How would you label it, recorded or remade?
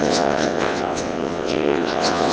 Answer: remade